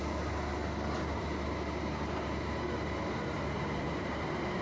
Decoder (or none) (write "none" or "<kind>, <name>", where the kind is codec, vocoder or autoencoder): none